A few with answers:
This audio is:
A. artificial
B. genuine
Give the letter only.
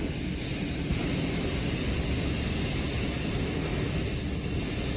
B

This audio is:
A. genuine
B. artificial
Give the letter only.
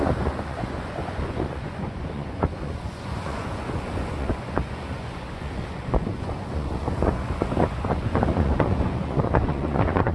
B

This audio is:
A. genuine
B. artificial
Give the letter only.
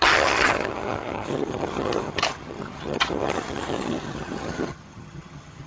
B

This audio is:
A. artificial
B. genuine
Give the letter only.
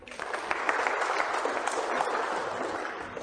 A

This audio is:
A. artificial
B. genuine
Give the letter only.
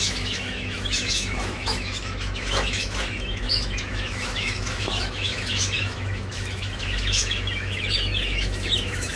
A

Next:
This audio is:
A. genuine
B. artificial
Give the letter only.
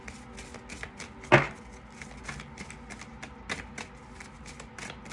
A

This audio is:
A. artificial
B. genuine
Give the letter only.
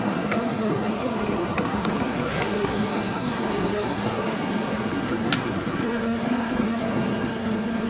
A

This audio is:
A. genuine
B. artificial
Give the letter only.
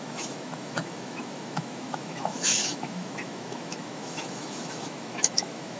B